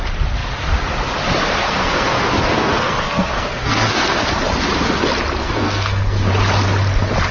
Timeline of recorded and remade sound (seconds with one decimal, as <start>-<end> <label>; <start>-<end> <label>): 0.0-1.6 recorded; 1.6-4.3 remade; 4.3-5.4 recorded; 5.4-6.3 remade; 6.3-7.3 recorded